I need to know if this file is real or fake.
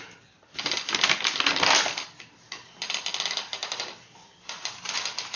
real